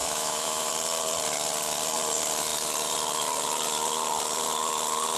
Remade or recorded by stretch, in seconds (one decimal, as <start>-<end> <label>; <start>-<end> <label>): 0.0-0.7 remade; 0.7-5.2 recorded